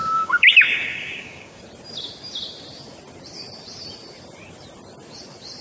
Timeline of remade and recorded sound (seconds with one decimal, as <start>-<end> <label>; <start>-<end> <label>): 0.0-1.6 remade; 1.6-5.6 recorded